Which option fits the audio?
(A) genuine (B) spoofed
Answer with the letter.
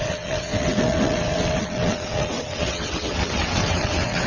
B